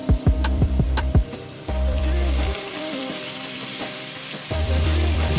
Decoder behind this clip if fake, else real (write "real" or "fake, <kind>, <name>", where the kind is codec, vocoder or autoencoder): fake, vocoder, BigVGAN v2